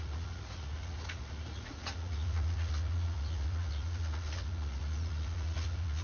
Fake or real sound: fake